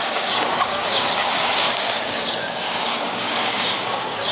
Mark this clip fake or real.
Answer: fake